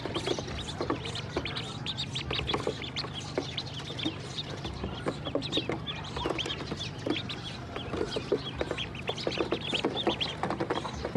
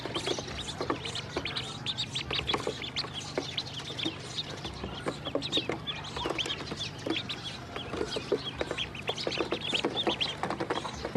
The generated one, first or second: first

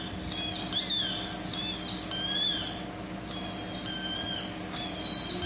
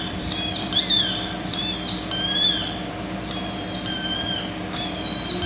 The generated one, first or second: second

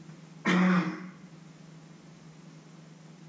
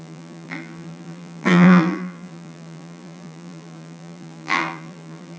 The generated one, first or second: second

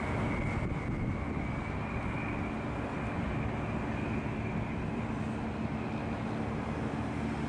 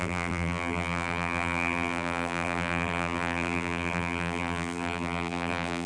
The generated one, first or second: second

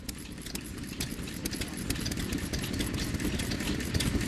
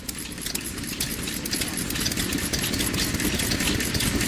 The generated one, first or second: first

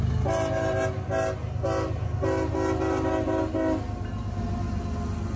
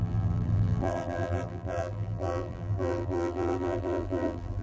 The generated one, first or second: second